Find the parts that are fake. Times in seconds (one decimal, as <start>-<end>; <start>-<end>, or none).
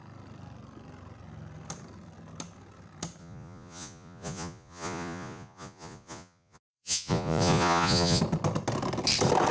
3.2-8.2